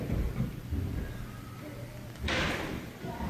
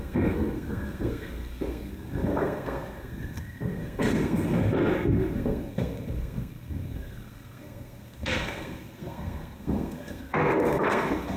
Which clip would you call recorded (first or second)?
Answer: first